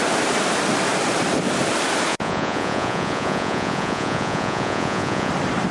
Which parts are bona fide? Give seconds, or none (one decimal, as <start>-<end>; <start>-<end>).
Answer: 0.0-2.1; 5.3-5.7